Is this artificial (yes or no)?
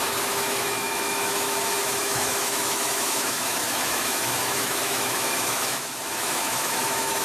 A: yes